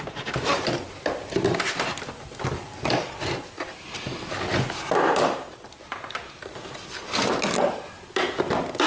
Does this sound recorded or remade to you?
recorded